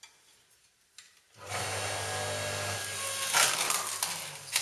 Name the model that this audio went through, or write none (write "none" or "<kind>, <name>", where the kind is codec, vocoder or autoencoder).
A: none